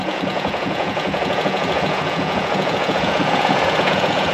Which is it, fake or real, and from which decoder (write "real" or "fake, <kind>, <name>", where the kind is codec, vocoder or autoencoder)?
fake, vocoder, Vocos